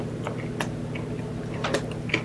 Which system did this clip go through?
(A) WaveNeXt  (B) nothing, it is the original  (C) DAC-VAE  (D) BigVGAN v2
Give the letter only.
B